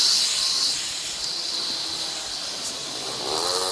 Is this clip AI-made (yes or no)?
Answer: no